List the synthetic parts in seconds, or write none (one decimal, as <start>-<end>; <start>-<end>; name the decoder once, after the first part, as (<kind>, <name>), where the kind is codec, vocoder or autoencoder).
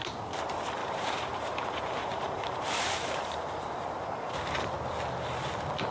0.8-4.3 (vocoder, BigVGAN v2)